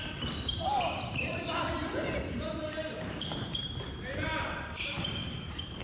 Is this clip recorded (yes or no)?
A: no